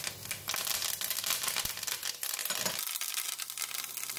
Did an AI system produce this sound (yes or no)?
no